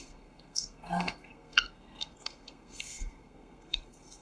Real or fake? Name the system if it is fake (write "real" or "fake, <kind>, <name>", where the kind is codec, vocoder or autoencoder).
fake, codec, SNAC